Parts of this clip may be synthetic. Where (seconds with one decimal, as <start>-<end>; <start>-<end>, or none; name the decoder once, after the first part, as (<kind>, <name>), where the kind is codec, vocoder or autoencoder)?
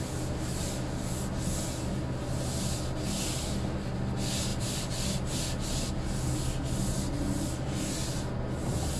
none